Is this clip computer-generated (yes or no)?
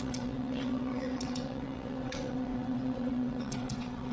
yes